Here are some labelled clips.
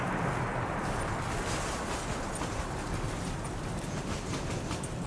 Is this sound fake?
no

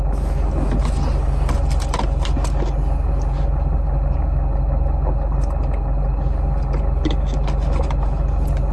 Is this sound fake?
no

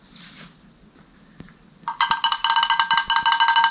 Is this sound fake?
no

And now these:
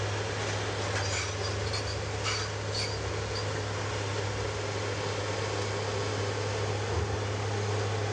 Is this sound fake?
no